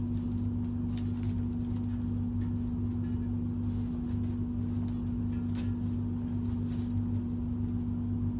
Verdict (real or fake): real